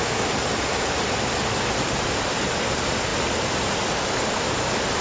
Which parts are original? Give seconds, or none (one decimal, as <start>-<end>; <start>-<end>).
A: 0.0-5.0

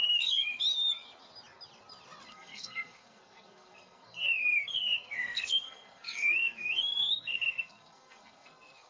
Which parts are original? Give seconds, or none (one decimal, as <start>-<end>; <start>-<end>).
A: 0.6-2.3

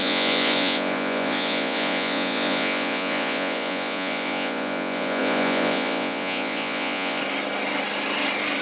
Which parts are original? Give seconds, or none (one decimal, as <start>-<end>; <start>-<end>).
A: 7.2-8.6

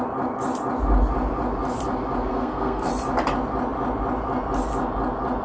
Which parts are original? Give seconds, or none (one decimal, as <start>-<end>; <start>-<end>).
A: 0.0-2.3; 2.9-5.4

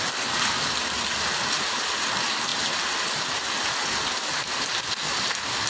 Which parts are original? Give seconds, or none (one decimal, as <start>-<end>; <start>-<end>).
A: 0.0-5.7

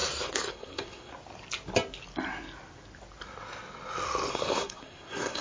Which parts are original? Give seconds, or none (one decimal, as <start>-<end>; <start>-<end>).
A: 0.0-0.5; 1.1-4.3

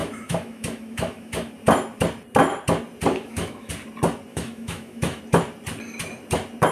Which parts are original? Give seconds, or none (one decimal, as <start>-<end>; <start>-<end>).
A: 1.5-3.1; 3.7-4.3; 5.2-6.7